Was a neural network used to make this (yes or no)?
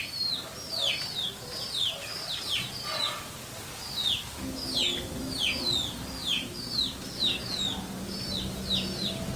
no